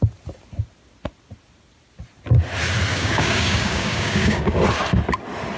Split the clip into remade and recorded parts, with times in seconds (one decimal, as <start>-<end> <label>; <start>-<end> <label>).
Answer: 0.0-2.9 recorded; 2.9-4.6 remade; 4.6-5.6 recorded